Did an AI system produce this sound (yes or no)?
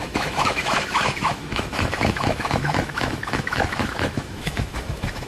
yes